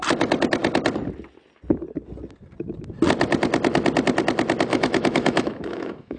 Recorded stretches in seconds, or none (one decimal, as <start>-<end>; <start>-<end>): 0.0-4.7